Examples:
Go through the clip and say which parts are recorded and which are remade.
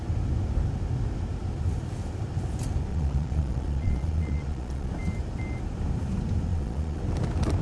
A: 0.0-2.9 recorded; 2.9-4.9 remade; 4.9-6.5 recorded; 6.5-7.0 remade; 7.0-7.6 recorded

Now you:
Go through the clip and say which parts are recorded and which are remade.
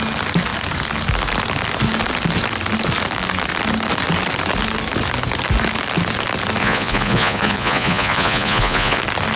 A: 0.0-6.6 recorded; 6.6-9.0 remade; 9.0-9.4 recorded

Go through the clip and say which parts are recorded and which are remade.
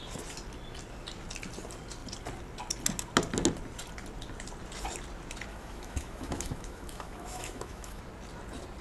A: 0.0-5.5 recorded; 5.5-8.0 remade; 8.0-8.8 recorded